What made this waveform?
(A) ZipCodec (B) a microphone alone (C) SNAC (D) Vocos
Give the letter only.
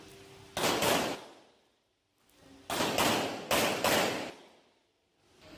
B